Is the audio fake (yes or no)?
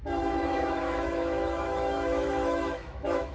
yes